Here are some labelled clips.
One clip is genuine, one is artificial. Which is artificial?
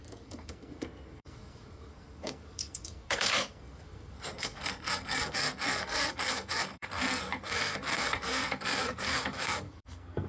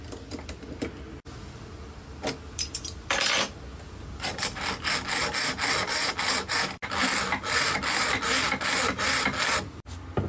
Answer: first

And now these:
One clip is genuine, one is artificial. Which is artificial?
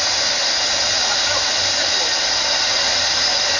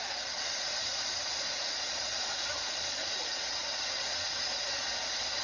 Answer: second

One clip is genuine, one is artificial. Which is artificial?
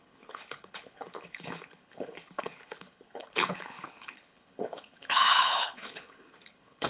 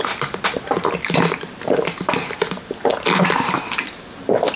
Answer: first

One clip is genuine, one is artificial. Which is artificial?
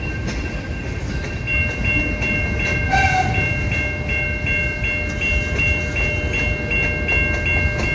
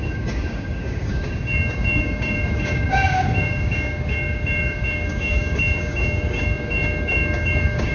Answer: second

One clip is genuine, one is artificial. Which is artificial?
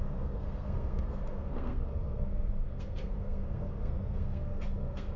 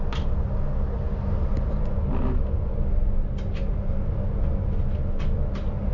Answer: first